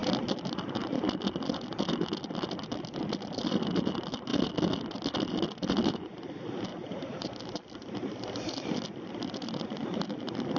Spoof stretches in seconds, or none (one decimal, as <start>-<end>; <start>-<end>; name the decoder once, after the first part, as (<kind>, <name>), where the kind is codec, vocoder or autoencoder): 6.7-7.4 (vocoder, BigVGAN v2)